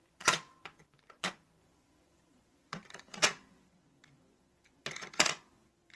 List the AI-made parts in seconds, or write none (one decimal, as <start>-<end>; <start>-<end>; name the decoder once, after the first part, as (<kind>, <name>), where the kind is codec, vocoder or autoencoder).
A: 0.0-6.0 (vocoder, Vocos)